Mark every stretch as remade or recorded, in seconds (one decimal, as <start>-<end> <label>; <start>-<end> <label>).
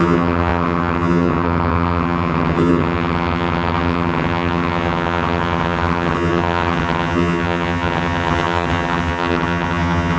0.0-10.2 remade